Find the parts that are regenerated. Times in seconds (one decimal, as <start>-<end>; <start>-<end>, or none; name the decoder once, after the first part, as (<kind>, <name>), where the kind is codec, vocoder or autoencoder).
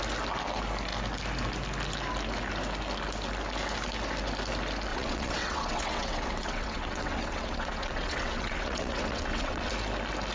4.9-9.7 (vocoder, WaveNeXt)